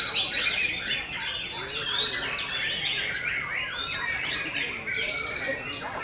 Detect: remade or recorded recorded